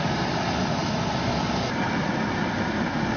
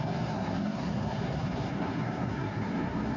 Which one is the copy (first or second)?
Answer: second